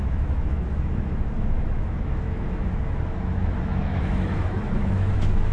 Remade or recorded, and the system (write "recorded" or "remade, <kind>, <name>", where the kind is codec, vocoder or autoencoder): remade, autoencoder, DAC-VAE